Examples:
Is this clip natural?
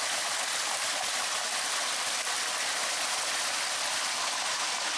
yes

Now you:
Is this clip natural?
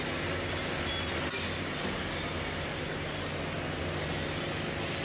yes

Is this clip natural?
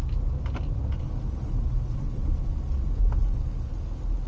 yes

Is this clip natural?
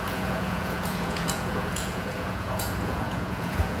no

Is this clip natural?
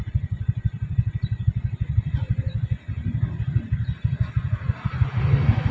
yes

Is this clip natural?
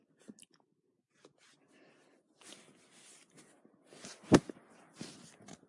yes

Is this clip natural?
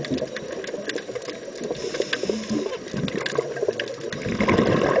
yes